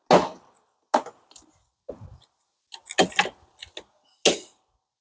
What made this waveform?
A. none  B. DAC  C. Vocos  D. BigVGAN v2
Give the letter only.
A